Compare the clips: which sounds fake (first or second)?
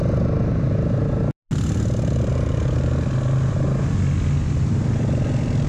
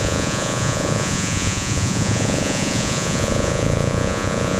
second